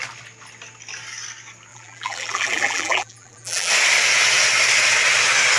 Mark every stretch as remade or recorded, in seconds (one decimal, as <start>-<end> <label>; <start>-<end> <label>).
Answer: 0.0-1.7 recorded; 1.7-3.7 remade; 3.7-5.6 recorded